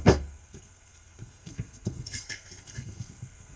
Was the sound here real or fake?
fake